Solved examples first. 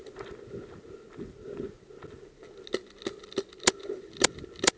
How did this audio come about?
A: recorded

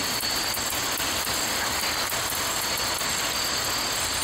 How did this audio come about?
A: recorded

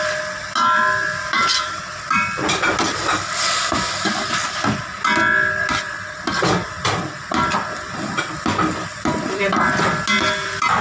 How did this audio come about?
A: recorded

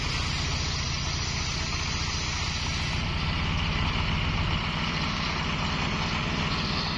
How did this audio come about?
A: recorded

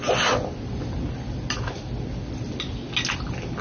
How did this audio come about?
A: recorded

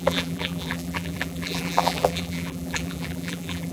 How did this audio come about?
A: remade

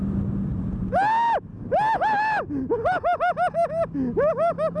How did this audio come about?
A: recorded